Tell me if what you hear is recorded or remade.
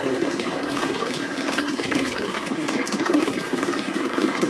remade